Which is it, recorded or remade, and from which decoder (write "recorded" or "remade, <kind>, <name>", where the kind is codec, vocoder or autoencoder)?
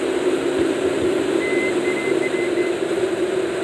recorded